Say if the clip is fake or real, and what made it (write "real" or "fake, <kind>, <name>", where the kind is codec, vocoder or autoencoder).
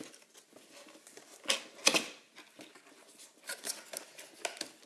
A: real